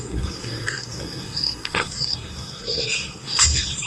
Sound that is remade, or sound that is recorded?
remade